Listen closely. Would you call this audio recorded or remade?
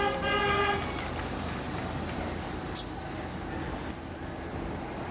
recorded